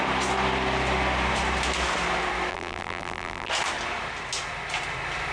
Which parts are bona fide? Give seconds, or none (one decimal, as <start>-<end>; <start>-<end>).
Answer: 0.0-2.5; 3.5-5.3